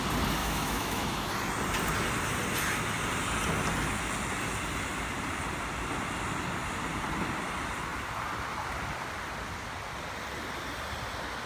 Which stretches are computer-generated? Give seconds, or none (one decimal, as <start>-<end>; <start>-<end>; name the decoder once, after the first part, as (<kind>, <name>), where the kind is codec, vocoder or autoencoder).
0.4-1.3 (autoencoder, DAC-VAE)